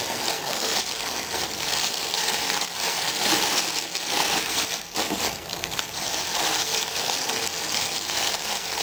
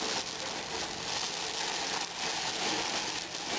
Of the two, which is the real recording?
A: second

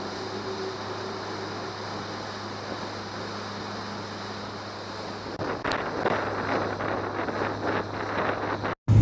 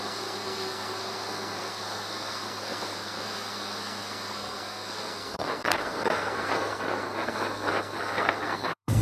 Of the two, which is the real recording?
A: first